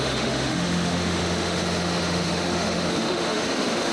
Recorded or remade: remade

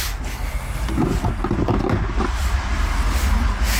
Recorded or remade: recorded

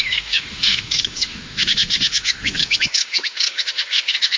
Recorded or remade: remade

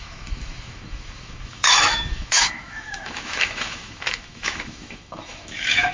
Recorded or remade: remade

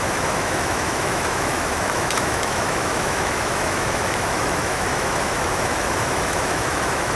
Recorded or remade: remade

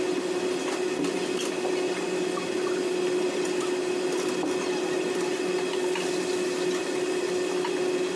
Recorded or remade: recorded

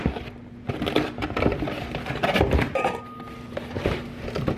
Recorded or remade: recorded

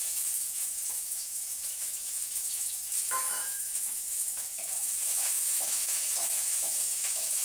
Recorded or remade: remade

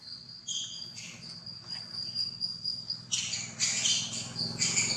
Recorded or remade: recorded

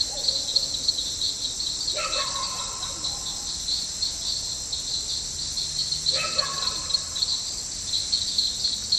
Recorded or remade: recorded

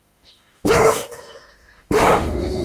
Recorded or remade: remade